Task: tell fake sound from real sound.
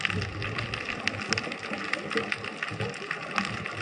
real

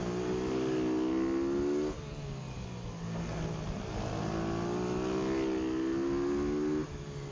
real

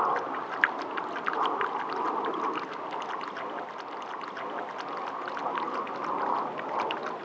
real